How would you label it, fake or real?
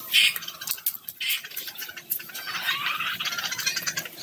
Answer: real